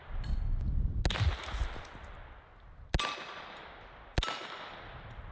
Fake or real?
real